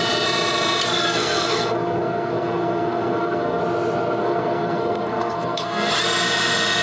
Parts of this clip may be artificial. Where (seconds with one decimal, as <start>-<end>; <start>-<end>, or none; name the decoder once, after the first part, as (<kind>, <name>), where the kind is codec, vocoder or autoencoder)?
0.9-3.6 (codec, SNAC); 4.2-5.9